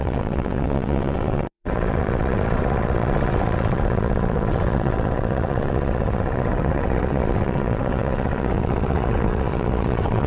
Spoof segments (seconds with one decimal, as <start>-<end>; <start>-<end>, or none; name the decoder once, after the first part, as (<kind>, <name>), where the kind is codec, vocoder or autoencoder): 0.0-10.3 (vocoder, WaveNeXt)